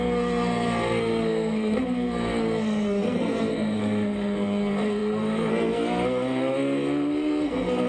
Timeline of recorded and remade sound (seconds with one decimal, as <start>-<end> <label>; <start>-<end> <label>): 0.0-7.9 remade